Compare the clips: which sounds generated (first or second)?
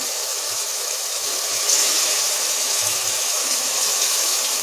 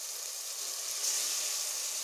first